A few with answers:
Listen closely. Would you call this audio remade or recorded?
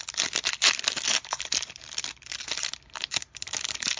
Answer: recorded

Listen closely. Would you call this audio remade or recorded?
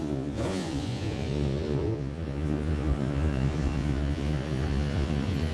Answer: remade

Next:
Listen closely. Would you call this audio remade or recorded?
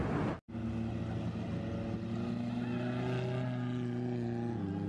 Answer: recorded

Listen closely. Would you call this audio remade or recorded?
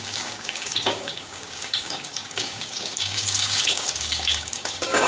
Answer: remade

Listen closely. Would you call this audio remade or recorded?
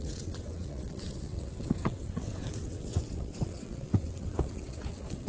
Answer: remade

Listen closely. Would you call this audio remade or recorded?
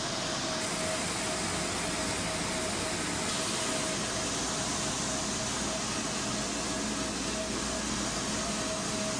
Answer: recorded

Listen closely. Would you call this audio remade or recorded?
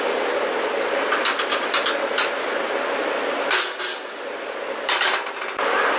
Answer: recorded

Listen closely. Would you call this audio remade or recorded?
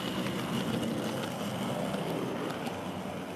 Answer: recorded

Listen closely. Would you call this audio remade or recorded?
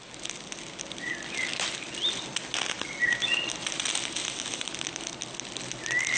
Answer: recorded